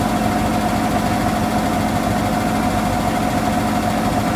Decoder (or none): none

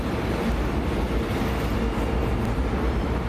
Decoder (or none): none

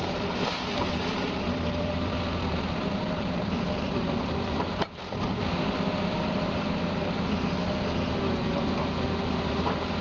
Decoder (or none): vocoder, BigVGAN v2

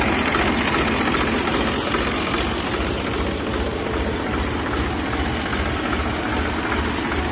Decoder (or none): none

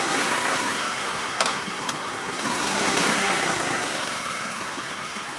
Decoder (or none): codec, SNAC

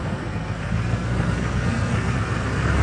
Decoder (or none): codec, SNAC